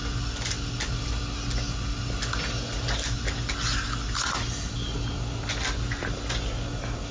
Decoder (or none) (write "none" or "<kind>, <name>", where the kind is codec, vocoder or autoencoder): none